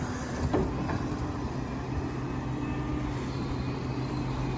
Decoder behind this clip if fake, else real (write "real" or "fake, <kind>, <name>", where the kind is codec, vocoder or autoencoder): real